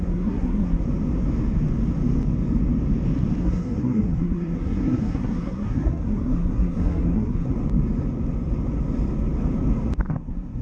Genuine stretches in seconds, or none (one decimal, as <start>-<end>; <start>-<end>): 0.8-3.4; 7.5-10.1